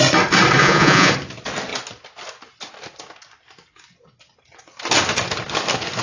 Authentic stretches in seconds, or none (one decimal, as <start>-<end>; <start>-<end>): 0.0-0.6; 1.1-6.0